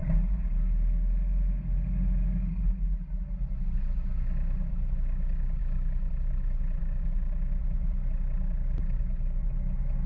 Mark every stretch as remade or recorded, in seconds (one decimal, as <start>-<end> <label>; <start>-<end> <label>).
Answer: 0.0-5.6 recorded; 5.6-6.1 remade; 6.1-6.8 recorded; 6.8-7.6 remade; 7.6-10.1 recorded